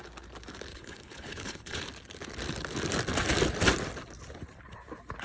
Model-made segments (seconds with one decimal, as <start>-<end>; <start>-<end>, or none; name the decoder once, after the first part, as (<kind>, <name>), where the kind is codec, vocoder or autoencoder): 0.7-1.8 (codec, HILCodec)

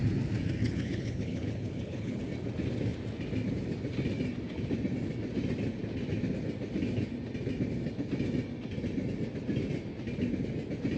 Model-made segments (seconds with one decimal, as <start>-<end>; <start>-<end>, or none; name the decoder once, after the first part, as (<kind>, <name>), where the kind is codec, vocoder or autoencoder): 0.6-2.2 (codec, HILCodec)

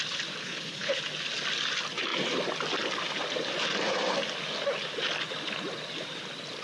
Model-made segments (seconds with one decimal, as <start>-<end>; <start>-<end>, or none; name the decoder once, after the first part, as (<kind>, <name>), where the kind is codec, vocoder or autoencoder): 0.4-1.0 (codec, HILCodec)

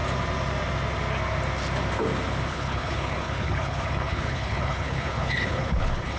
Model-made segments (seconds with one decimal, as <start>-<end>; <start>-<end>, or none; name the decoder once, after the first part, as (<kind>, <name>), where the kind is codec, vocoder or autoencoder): 2.5-6.2 (codec, HILCodec)

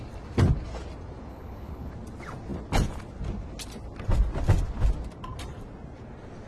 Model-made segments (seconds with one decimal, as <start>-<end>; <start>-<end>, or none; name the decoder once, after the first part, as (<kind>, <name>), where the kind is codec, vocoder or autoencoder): 1.3-1.9 (codec, HILCodec)

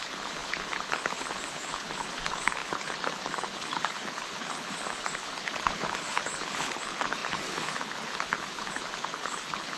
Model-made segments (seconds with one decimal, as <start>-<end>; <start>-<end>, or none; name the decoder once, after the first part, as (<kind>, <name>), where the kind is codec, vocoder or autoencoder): 0.0-9.8 (codec, HILCodec)